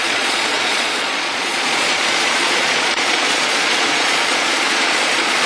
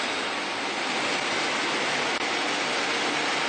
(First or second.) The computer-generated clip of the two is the first